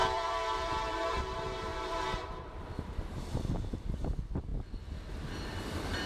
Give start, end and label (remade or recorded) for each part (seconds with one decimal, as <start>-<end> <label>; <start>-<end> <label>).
0.0-1.2 remade; 1.2-1.7 recorded; 1.7-2.8 remade; 2.8-4.5 recorded; 4.5-6.1 remade